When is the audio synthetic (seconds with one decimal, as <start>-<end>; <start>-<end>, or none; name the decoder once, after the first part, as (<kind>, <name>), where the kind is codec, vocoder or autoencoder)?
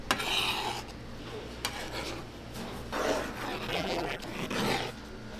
3.7-4.2 (vocoder, BigVGAN v2)